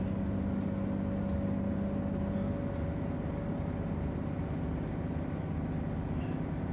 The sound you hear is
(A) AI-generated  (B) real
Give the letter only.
B